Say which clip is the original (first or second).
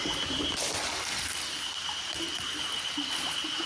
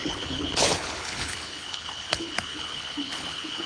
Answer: first